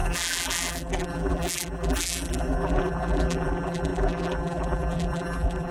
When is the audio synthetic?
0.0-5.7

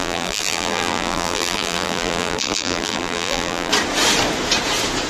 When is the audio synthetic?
0.0-3.7

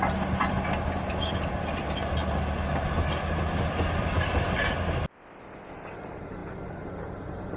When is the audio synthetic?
none

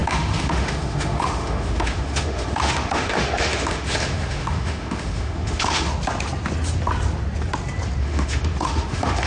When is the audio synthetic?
0.0-5.9; 8.0-9.3

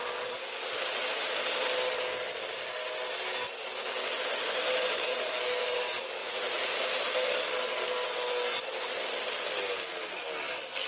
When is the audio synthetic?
6.2-7.0

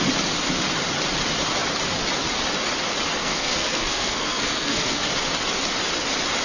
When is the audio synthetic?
3.2-5.1

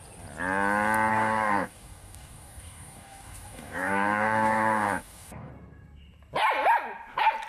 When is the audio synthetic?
1.1-5.5

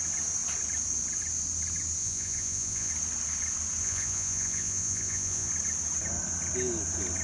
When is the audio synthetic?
2.0-2.9; 3.8-5.5